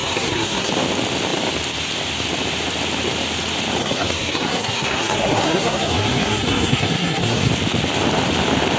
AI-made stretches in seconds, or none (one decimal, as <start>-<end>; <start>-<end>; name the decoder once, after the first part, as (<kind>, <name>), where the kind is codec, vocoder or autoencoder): 0.0-0.7 (codec, SNAC); 3.8-7.5